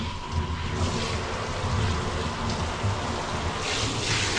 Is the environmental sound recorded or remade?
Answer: recorded